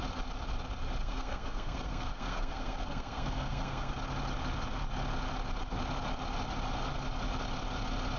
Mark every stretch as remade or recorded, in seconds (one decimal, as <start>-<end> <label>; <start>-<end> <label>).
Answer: 0.0-1.0 recorded; 1.0-3.9 remade; 3.9-8.2 recorded